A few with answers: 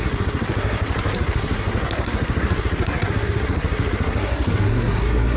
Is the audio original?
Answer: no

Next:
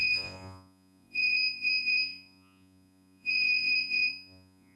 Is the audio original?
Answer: no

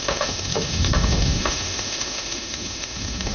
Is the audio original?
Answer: no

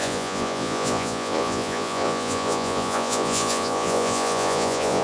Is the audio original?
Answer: no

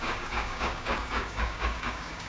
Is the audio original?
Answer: no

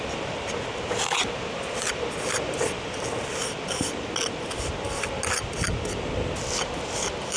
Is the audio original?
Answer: yes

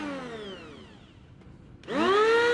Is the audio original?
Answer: yes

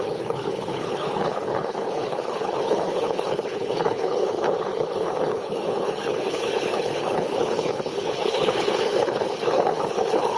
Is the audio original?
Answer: no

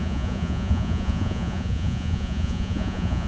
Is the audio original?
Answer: no